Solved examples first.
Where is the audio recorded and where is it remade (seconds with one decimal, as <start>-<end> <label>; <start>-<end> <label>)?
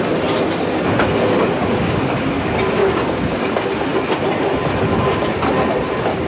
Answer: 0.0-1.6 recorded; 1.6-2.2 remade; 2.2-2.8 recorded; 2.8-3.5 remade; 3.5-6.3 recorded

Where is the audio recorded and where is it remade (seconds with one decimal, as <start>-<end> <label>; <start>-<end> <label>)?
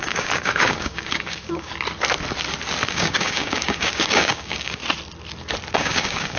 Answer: 0.0-1.7 remade; 1.7-2.9 recorded; 2.9-4.8 remade; 4.8-5.7 recorded; 5.7-6.4 remade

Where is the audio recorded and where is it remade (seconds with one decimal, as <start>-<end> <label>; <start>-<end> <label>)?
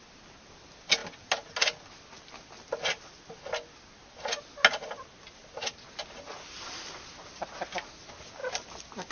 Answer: 0.0-9.1 recorded